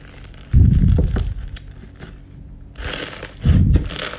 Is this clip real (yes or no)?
yes